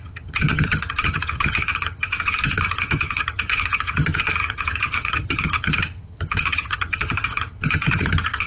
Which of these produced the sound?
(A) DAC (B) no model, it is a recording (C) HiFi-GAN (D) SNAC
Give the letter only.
C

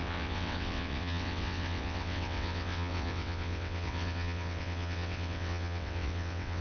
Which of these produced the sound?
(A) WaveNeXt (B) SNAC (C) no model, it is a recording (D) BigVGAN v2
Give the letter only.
A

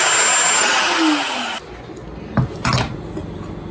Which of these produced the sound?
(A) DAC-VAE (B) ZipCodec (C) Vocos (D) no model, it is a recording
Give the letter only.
D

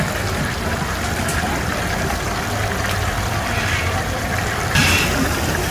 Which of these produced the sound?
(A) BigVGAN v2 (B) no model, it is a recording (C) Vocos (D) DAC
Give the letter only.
A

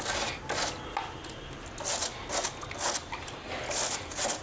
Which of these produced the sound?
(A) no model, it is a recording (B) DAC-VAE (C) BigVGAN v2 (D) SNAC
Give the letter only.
A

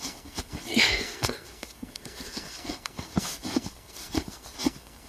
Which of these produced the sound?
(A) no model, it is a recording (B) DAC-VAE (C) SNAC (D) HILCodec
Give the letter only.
C